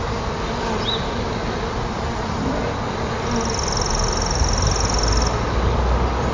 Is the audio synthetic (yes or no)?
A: no